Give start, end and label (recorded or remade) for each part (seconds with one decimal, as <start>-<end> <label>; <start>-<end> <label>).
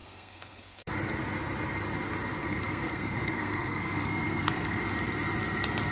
0.0-0.9 remade; 0.9-2.4 recorded; 2.4-4.8 remade; 4.8-5.9 recorded